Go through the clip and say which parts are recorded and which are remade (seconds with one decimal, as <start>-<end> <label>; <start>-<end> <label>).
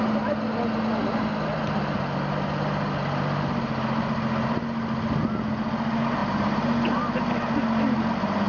0.0-8.5 recorded